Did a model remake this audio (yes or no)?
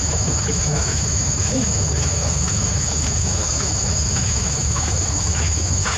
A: yes